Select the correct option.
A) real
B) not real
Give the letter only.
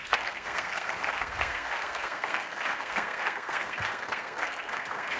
B